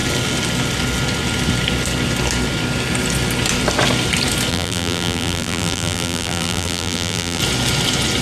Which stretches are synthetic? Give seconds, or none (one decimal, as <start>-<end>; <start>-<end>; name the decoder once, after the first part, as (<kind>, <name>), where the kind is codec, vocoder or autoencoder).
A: 4.5-7.4 (vocoder, BigVGAN v2)